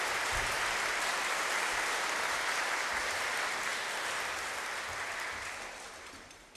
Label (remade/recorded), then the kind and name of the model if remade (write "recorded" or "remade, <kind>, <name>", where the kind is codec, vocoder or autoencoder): recorded